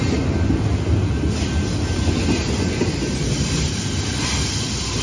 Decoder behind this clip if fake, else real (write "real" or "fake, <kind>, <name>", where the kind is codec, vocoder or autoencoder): real